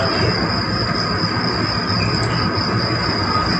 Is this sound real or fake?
real